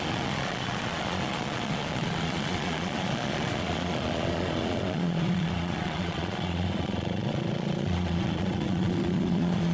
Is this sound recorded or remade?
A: remade